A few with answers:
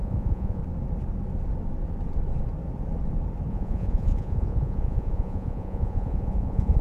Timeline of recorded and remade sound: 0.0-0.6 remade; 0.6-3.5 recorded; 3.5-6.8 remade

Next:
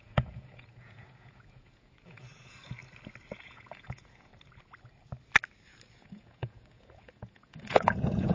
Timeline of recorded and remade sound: 0.0-2.8 remade; 2.8-3.4 recorded; 3.4-4.3 remade; 4.3-5.9 recorded; 5.9-8.3 remade

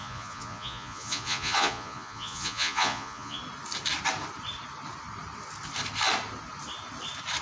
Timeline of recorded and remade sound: 0.0-3.4 remade; 3.4-7.4 recorded

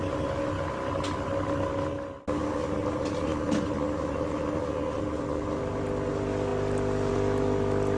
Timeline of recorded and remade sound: 0.0-8.0 recorded